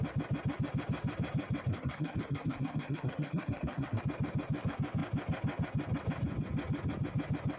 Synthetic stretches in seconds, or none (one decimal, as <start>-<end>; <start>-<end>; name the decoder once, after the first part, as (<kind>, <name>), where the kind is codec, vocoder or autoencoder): 1.7-4.0 (codec, SNAC)